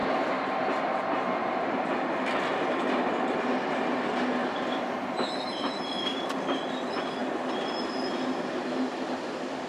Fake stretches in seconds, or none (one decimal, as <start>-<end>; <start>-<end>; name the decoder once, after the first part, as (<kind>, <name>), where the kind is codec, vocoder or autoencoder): 0.0-1.8 (vocoder, BigVGAN v2); 4.4-6.4